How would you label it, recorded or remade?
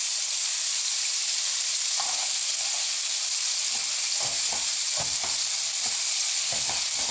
recorded